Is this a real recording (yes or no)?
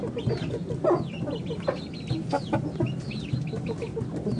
yes